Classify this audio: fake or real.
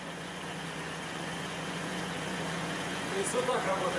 fake